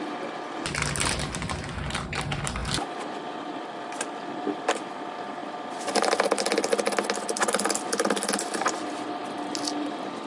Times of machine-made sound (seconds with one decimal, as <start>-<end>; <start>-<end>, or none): none